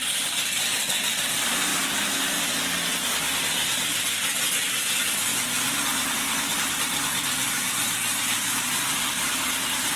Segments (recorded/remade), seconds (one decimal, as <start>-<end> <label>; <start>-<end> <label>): 0.0-10.0 recorded